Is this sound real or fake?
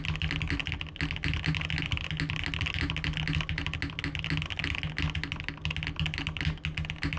real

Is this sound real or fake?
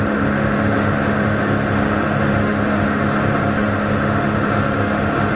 fake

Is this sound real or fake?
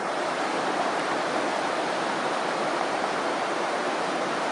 fake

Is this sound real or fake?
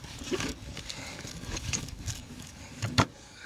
fake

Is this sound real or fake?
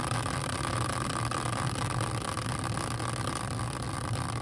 real